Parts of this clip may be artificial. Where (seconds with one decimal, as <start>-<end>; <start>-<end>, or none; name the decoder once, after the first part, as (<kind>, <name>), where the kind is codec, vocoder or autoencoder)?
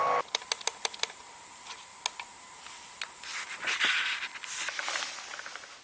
none